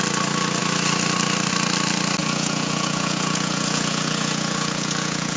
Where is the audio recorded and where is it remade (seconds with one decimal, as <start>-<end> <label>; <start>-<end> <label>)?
0.0-2.2 recorded; 2.2-5.4 remade